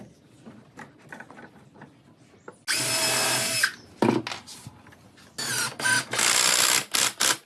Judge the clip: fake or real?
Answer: real